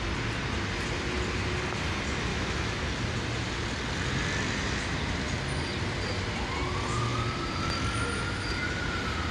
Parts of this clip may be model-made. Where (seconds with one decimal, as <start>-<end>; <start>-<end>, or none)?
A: 2.3-2.8